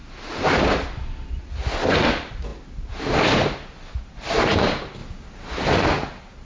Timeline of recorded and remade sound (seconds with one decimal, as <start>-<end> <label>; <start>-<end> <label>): 0.0-6.4 recorded